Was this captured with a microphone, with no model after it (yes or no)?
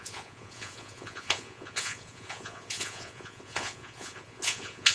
no